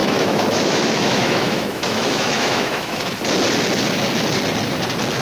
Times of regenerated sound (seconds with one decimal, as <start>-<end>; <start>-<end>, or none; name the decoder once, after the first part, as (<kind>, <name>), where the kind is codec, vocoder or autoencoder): 0.0-3.1 (autoencoder, DAC-VAE)